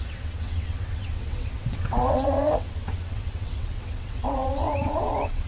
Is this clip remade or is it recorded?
remade